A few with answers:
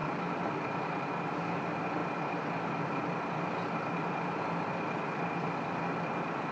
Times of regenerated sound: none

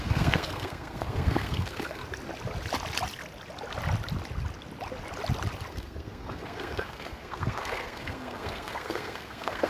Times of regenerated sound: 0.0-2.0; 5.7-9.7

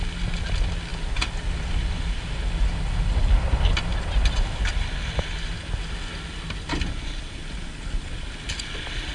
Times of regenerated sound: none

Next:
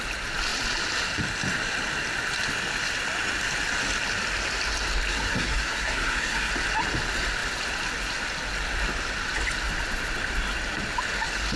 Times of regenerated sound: 5.1-6.5

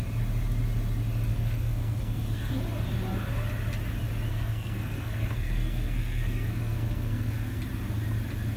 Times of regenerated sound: 1.3-2.5; 4.3-7.6

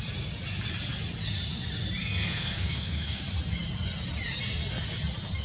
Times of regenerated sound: 2.0-3.2